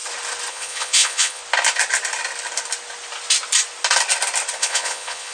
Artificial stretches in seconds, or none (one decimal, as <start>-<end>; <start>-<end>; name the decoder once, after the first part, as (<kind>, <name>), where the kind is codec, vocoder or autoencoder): 0.5-1.4 (vocoder, Vocos); 4.6-5.3